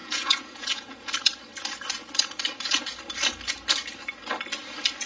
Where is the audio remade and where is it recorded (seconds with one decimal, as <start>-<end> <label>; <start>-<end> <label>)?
0.0-1.1 remade; 1.1-5.1 recorded